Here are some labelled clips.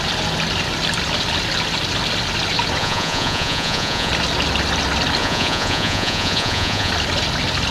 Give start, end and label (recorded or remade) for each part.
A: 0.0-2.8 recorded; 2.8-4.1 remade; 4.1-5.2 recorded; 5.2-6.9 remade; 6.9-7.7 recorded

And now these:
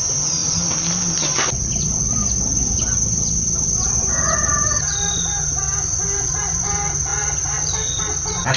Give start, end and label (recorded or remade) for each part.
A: 0.0-8.6 recorded

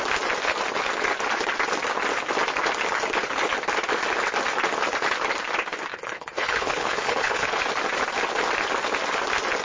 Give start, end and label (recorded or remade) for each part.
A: 0.0-5.9 recorded; 5.9-7.6 remade; 7.6-9.6 recorded

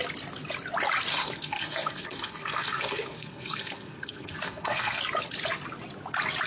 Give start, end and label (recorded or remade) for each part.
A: 0.0-1.1 recorded; 1.1-5.0 remade; 5.0-6.5 recorded

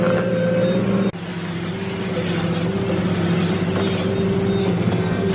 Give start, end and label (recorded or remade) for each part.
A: 0.0-4.6 recorded; 4.6-5.3 remade

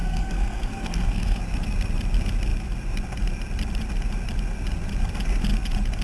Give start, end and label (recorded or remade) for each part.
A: 0.0-1.4 remade; 1.4-6.0 recorded

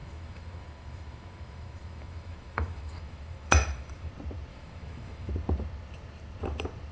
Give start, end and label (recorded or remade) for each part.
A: 0.0-4.1 remade; 4.1-4.5 recorded; 4.5-5.3 remade; 5.3-6.9 recorded

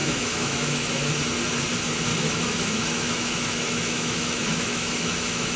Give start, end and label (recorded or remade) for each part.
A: 0.0-1.1 remade; 1.1-2.1 recorded; 2.1-5.6 remade